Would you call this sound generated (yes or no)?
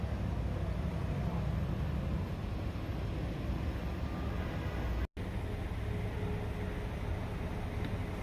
no